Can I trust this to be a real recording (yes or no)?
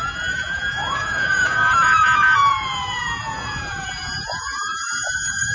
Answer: no